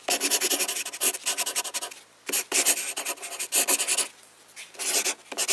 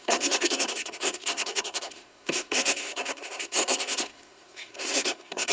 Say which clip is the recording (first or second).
first